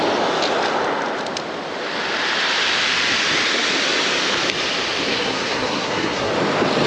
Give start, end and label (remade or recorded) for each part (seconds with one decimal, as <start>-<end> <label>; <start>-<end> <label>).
0.0-5.1 recorded; 5.1-6.3 remade; 6.3-6.9 recorded